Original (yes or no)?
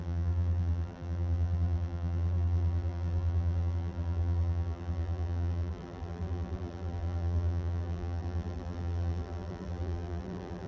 no